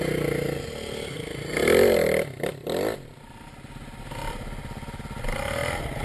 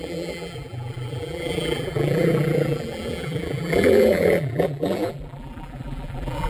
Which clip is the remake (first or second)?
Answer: second